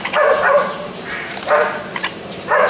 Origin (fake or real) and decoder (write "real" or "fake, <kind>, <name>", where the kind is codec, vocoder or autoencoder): fake, vocoder, BigVGAN v2